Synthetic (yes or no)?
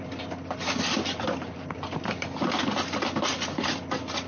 no